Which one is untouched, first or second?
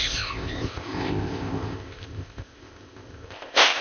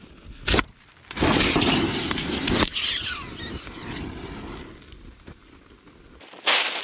second